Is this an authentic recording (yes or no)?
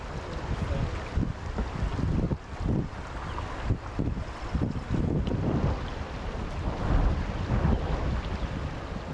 yes